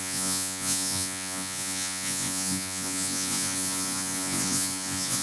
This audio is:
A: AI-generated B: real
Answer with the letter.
A